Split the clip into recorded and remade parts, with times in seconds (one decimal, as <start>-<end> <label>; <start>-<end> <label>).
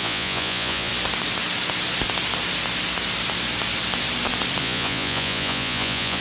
0.0-0.9 remade; 0.9-4.6 recorded; 4.6-6.2 remade